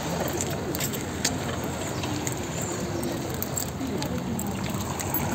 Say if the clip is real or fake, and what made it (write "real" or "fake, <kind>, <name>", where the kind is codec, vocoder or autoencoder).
real